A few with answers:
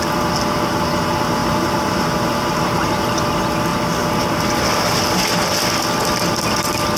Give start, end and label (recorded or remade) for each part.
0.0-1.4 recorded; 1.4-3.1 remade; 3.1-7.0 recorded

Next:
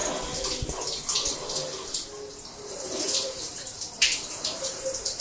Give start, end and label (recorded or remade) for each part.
0.0-2.7 recorded; 2.7-5.2 remade

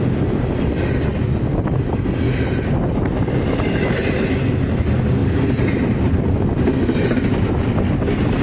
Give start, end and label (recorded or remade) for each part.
0.0-8.4 recorded